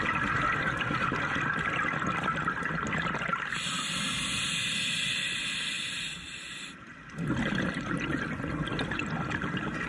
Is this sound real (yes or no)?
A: yes